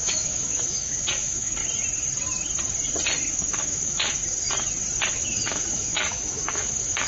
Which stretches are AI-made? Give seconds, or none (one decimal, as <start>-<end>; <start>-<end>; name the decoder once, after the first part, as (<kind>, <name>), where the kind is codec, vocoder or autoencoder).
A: 0.0-1.6 (autoencoder, DAC-VAE); 3.3-4.2; 5.1-7.1